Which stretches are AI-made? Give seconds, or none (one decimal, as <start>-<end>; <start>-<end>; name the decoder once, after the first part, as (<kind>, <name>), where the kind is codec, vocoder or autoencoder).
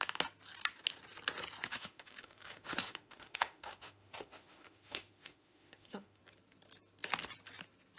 1.7-6.2 (autoencoder, DAC-VAE)